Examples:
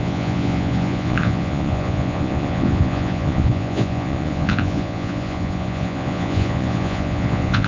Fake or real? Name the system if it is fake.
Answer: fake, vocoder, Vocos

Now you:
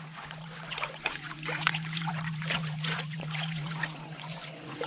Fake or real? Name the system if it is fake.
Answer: fake, vocoder, Vocos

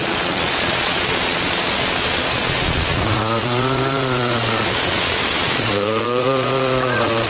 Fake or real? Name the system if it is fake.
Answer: fake, vocoder, Vocos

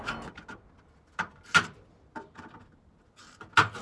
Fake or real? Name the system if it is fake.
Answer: real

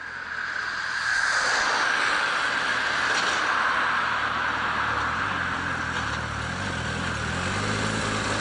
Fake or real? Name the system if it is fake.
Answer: real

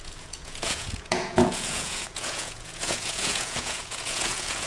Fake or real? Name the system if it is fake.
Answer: fake, vocoder, Vocos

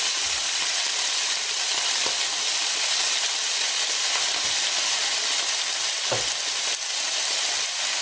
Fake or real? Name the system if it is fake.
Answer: real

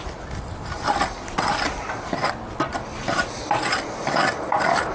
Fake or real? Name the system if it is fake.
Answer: real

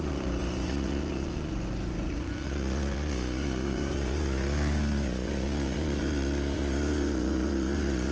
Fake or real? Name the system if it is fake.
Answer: fake, vocoder, Vocos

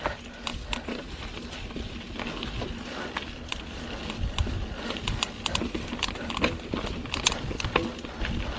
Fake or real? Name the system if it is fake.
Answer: real